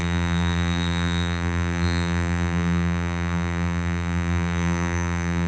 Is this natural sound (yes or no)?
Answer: no